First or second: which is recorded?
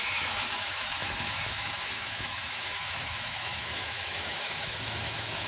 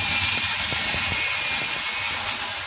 second